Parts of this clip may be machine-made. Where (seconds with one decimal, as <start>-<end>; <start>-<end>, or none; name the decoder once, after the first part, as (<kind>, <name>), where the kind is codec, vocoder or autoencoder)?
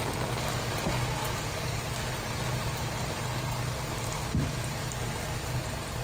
1.2-1.8 (codec, DAC)